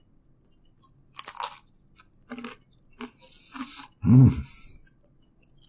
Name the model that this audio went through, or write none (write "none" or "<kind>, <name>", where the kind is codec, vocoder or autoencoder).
none